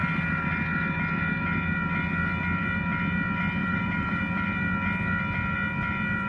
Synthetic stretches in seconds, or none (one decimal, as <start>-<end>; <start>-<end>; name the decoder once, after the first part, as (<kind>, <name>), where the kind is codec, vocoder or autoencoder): 3.6-4.2 (vocoder, BigVGAN v2)